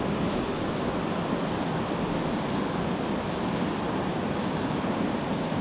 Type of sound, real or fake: real